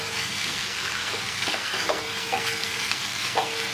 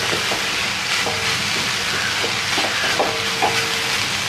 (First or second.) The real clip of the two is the second